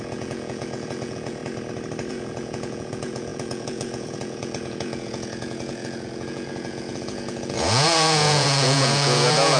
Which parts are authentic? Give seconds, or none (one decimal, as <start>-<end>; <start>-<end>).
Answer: 1.4-2.1